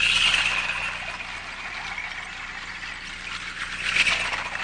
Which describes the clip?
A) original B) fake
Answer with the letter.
A